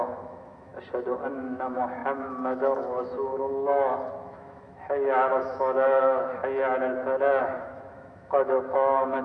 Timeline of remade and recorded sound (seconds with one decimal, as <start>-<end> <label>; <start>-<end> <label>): 0.0-0.7 remade; 0.7-1.3 recorded; 1.3-6.4 remade; 6.4-7.4 recorded; 7.4-9.2 remade